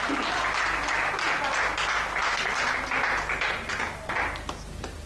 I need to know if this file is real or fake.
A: real